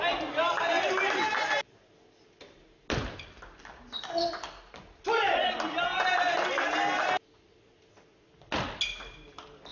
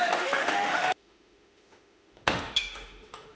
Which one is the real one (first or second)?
first